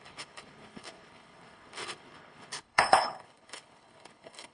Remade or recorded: remade